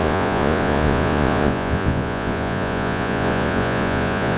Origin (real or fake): fake